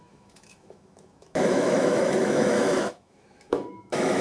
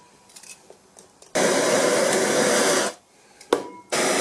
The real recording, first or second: second